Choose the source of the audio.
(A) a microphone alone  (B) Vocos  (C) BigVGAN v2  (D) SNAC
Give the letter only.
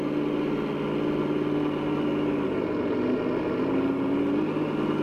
A